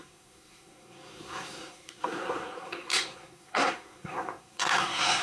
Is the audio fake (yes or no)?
yes